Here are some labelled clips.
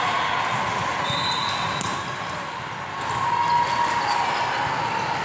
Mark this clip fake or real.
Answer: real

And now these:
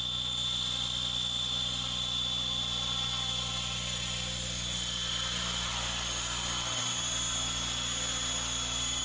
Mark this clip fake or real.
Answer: real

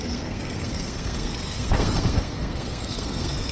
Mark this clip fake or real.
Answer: fake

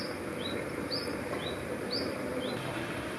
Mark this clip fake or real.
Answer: real